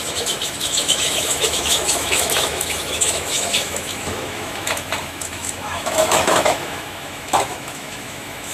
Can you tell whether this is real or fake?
fake